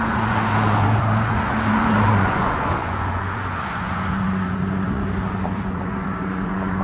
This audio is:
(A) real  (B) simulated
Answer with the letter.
B